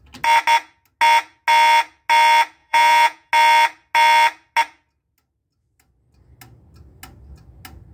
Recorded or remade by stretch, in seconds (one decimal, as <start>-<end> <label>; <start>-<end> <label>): 0.0-2.6 recorded; 2.6-3.3 remade; 3.3-7.9 recorded